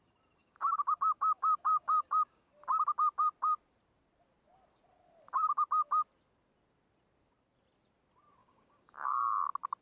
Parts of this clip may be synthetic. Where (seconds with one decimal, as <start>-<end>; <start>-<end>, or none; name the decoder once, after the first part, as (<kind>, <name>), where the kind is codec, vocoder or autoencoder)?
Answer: 0.4-2.5 (codec, DAC); 8.4-9.3